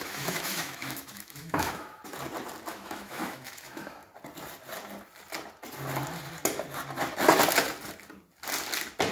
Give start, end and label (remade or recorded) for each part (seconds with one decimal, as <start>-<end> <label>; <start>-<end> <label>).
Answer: 0.0-2.0 remade; 2.0-2.7 recorded; 2.7-4.0 remade; 4.0-9.1 recorded